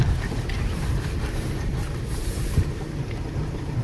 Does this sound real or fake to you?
fake